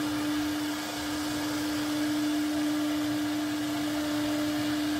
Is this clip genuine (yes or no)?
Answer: yes